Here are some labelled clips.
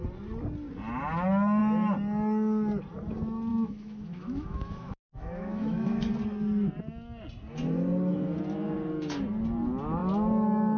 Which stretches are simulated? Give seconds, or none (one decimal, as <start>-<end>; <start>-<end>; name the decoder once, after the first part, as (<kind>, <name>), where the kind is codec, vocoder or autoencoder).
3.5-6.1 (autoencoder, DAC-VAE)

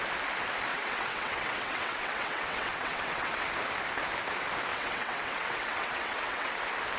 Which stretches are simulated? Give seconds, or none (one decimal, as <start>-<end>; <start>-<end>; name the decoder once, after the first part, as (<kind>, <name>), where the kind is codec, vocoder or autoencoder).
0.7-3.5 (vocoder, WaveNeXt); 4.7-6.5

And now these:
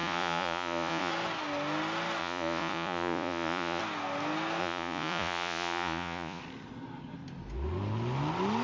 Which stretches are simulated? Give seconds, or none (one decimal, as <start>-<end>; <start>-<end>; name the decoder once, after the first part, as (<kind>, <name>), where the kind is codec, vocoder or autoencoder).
0.0-1.1 (vocoder, Vocos); 2.2-3.8; 4.6-6.4

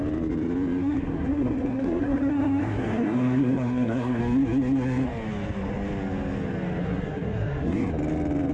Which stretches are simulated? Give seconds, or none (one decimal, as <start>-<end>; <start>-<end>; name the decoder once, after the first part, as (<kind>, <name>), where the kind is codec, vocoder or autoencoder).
0.8-4.2 (codec, SNAC); 6.8-7.9

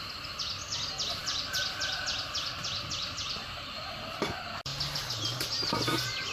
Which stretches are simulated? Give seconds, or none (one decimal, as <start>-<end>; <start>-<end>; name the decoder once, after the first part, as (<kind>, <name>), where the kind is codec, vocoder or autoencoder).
none

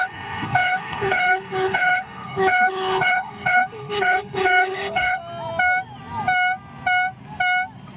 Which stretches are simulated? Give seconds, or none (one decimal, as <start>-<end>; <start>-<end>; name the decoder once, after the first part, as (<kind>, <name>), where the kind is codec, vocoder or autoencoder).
0.0-5.2 (codec, HILCodec)

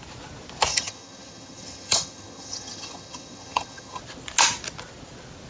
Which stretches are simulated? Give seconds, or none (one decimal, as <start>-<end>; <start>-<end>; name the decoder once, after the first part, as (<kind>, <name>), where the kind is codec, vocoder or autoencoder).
0.7-4.0 (vocoder, HiFi-GAN)

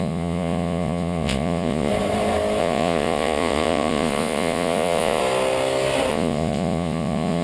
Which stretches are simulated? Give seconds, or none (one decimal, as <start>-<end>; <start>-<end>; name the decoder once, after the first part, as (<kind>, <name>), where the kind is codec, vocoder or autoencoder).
0.0-1.9 (vocoder, Vocos); 2.6-5.2; 6.1-7.4